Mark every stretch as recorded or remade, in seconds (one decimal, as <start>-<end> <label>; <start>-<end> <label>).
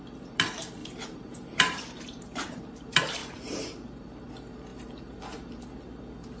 0.0-0.8 recorded; 0.8-2.6 remade; 2.6-3.2 recorded; 3.2-4.3 remade; 4.3-4.7 recorded; 4.7-5.2 remade; 5.2-6.4 recorded